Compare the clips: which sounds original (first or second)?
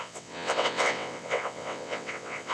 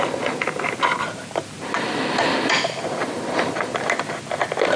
second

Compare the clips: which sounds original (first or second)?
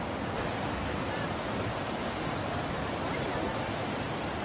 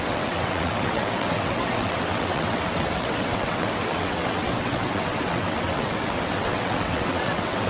first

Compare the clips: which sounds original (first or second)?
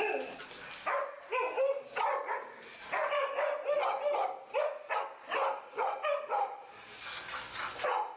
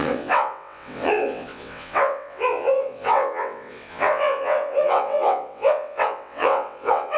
first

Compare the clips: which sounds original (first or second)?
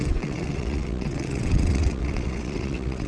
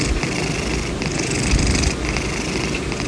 second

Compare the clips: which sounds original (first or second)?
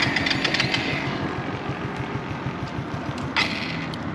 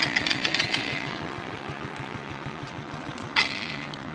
first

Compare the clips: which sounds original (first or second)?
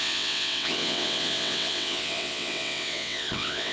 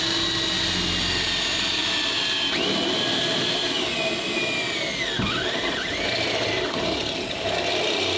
second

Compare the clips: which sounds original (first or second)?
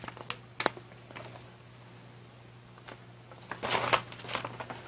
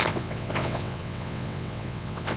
first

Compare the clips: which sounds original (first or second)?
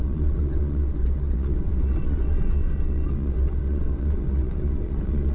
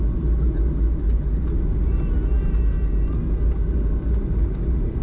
second